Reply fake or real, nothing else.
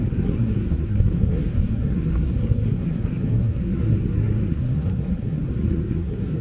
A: fake